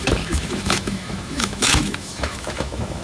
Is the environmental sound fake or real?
fake